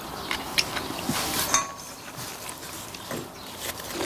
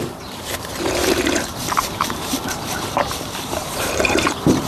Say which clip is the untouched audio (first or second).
first